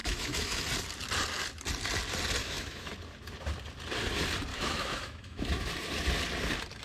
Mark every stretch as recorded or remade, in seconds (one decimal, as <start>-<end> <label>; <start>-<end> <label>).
0.0-0.6 remade; 0.6-2.4 recorded; 2.4-2.9 remade; 2.9-4.5 recorded; 4.5-5.7 remade; 5.7-6.8 recorded